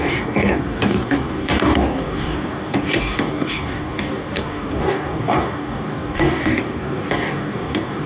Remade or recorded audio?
remade